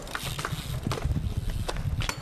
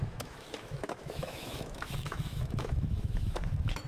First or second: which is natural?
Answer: first